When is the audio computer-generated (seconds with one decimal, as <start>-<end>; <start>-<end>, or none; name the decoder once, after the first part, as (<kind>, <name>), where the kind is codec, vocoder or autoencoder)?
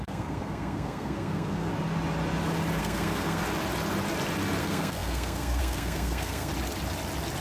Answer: 0.0-1.7 (codec, SNAC); 2.8-3.4; 4.6-6.5